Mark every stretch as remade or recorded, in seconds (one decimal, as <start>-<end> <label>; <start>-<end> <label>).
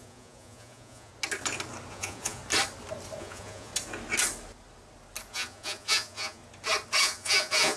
0.0-1.1 remade; 1.1-1.9 recorded; 1.9-2.4 remade; 2.4-3.2 recorded; 3.2-3.7 remade; 3.7-5.3 recorded; 5.3-6.4 remade; 6.4-7.0 recorded; 7.0-7.8 remade